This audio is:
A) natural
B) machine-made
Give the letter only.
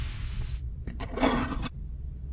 B